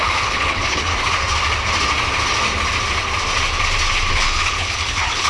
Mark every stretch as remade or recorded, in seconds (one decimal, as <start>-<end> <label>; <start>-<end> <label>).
0.0-0.9 remade; 0.9-4.1 recorded; 4.1-5.3 remade